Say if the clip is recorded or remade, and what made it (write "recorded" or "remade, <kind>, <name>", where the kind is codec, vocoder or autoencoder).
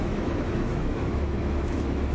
remade, autoencoder, DAC-VAE